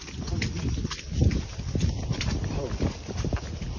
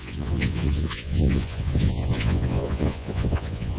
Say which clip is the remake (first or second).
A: second